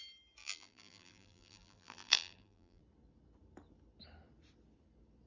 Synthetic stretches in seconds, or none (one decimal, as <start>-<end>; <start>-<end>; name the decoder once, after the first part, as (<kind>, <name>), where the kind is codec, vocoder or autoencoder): 0.4-2.8 (vocoder, BigVGAN v2)